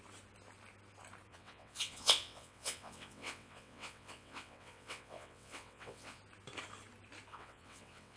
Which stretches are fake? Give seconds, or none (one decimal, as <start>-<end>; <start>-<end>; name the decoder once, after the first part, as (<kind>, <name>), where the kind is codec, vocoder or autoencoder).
1.3-6.2 (vocoder, WaveNeXt); 7.3-8.2

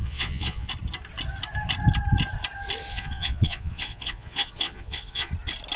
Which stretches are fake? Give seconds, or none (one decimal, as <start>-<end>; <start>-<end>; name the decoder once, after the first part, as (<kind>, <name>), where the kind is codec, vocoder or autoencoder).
0.0-0.7 (vocoder, Vocos); 2.9-5.3

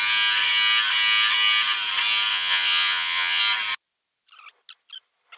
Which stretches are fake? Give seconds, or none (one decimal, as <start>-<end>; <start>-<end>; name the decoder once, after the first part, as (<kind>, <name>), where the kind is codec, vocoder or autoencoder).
2.3-3.4 (vocoder, Vocos)

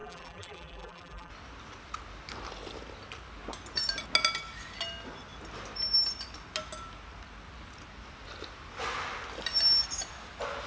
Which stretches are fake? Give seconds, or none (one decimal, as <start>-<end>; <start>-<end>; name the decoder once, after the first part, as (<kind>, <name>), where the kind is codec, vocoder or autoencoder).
0.0-1.3 (vocoder, BigVGAN v2)